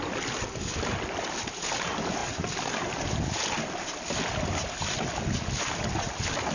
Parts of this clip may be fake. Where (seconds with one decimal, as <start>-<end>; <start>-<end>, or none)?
none